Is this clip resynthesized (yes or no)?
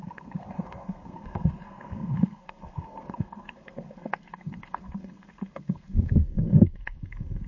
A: yes